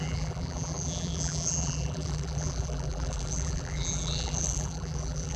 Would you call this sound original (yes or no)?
no